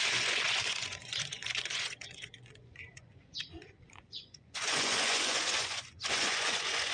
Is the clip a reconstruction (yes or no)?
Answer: yes